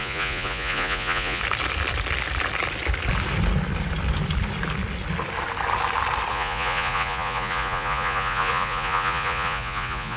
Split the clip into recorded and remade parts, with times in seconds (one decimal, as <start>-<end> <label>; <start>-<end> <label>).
0.0-1.4 remade; 1.4-6.3 recorded; 6.3-10.2 remade